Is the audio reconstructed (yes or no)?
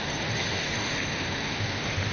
yes